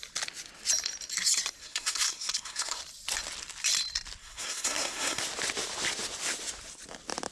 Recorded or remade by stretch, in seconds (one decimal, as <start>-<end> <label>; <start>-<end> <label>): 0.0-1.6 recorded; 1.6-2.8 remade; 2.8-4.2 recorded; 4.2-5.2 remade; 5.2-7.3 recorded